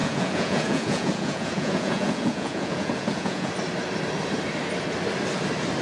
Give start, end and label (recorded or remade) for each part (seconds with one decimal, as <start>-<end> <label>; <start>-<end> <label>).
0.0-3.5 remade; 3.5-5.8 recorded